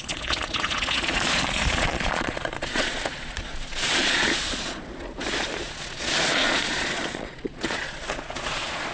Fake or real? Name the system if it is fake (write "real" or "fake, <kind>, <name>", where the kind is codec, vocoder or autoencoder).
fake, vocoder, Vocos